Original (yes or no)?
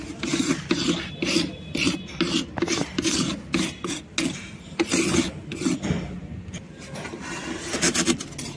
yes